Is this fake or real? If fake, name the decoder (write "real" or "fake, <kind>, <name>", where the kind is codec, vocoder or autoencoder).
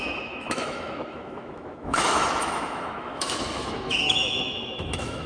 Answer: fake, autoencoder, DAC-VAE